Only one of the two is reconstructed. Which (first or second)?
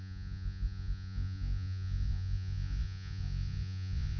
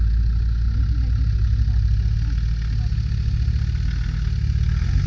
first